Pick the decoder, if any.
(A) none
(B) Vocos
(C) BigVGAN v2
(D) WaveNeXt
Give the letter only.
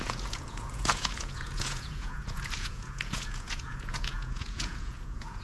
B